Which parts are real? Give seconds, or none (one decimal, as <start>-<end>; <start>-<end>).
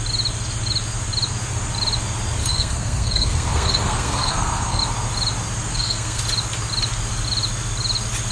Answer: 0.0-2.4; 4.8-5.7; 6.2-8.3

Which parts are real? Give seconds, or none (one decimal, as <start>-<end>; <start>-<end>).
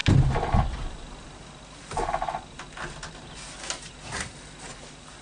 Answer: 0.0-5.2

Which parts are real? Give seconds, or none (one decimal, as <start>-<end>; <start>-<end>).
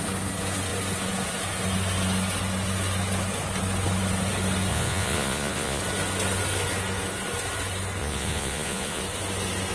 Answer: 0.0-4.7; 5.8-8.0; 9.0-9.7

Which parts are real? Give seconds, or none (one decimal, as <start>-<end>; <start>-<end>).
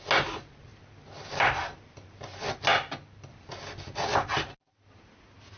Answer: 0.0-5.6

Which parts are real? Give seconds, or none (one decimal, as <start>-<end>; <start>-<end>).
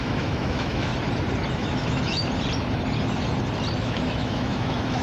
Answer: 0.9-1.5; 2.2-3.8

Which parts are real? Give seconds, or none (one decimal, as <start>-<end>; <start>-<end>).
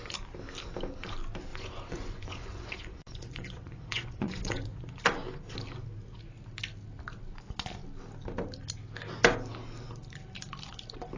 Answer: 0.0-1.5; 5.0-11.2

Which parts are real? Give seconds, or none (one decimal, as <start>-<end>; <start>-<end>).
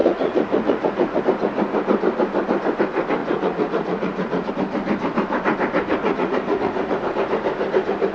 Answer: 1.2-3.2; 4.5-6.0; 7.0-8.1